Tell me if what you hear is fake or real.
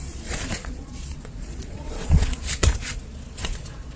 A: fake